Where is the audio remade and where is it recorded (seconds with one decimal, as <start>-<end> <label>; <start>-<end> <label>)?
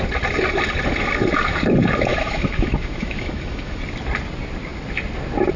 0.0-2.1 recorded; 2.1-3.8 remade; 3.8-5.6 recorded